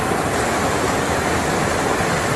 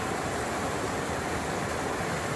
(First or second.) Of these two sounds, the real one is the first